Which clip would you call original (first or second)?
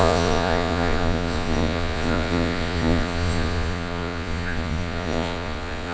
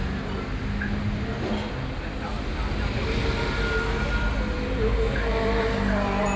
second